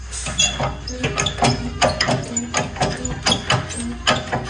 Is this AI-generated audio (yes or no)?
no